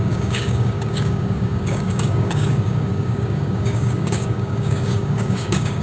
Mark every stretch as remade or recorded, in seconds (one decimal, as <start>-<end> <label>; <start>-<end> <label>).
0.0-5.8 remade